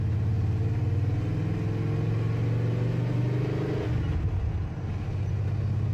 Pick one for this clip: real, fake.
real